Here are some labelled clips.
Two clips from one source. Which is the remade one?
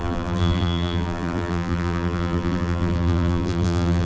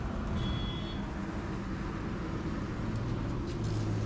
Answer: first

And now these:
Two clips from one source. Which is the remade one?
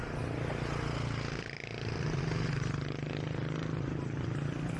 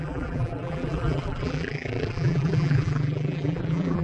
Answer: second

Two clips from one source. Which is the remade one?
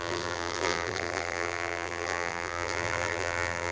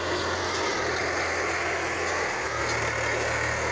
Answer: first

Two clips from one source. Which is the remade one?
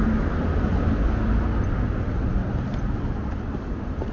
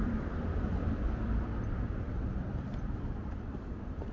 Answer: second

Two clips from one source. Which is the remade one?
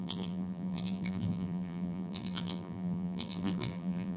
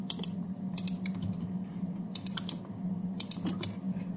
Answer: first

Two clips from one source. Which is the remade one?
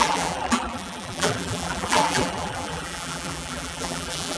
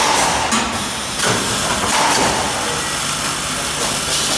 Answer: first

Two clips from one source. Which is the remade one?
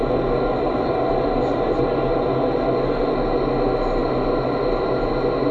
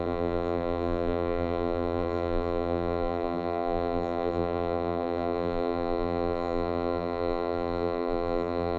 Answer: second